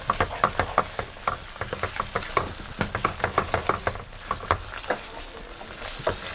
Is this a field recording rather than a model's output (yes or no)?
yes